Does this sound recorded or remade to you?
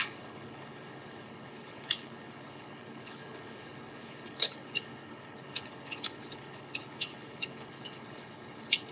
remade